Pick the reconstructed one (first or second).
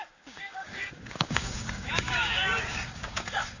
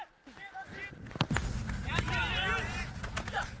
first